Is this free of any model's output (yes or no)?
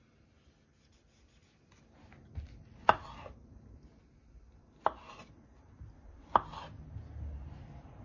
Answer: yes